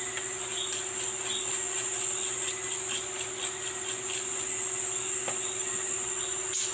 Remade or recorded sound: recorded